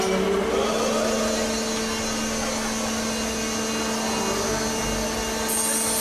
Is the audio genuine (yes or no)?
yes